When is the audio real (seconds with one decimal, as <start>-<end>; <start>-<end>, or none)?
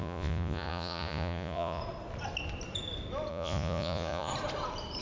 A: 1.8-3.3; 4.3-5.0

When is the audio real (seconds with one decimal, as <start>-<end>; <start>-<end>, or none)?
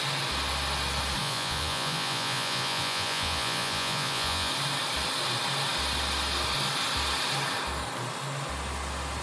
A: 0.0-1.2; 4.5-9.2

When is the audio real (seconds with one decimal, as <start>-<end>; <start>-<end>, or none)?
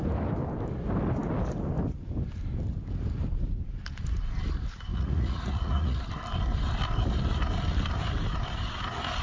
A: 0.0-4.9; 6.0-9.2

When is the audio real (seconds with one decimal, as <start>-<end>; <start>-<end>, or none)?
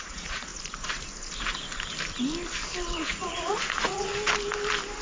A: 0.5-3.0; 4.1-5.0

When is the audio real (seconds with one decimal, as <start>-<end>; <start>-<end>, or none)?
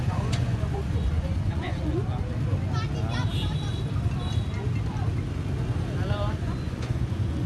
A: 1.9-6.4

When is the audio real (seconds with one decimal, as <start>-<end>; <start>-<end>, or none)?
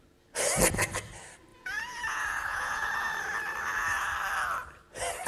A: 0.0-1.5; 3.2-5.3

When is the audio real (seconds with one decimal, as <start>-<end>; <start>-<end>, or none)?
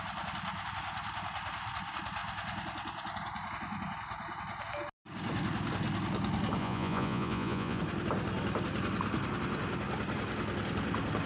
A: 0.0-6.6; 7.8-11.3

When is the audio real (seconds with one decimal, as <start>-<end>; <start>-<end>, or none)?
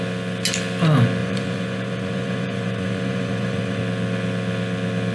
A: 0.0-1.2; 3.8-5.1